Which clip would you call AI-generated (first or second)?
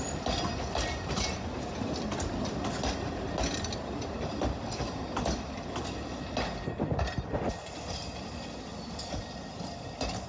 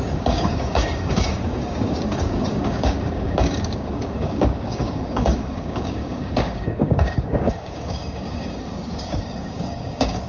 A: second